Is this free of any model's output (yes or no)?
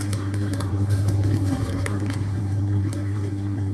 no